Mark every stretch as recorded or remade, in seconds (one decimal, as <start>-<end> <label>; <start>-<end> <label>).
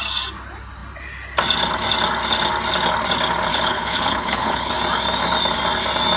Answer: 0.0-3.5 recorded; 3.5-4.7 remade; 4.7-6.2 recorded